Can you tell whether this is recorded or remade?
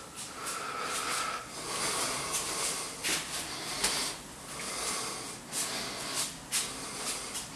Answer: recorded